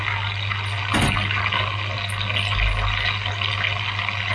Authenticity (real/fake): real